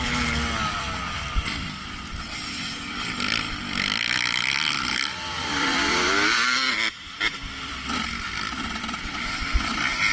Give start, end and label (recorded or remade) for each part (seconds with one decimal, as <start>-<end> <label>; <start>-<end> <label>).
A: 0.0-10.1 remade